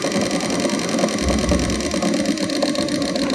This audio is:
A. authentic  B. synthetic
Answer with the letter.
A